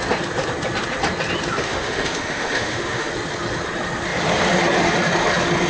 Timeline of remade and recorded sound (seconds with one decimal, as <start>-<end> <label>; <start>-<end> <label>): 0.0-1.6 recorded; 1.6-3.1 remade; 3.1-5.7 recorded